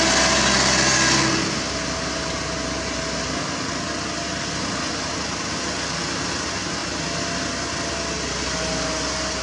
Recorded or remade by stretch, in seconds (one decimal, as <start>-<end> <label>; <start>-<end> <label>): 0.0-9.4 recorded